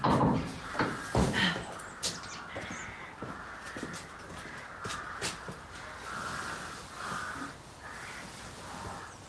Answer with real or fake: real